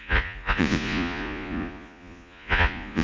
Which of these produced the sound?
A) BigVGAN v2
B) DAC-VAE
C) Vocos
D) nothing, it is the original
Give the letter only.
C